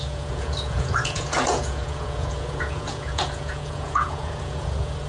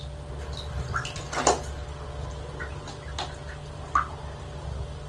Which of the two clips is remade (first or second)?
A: first